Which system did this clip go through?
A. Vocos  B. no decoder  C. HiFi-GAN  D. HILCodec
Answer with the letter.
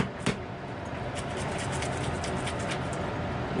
B